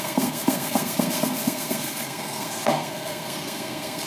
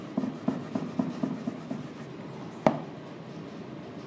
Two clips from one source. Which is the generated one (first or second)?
first